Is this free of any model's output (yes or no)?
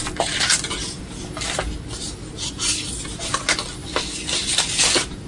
yes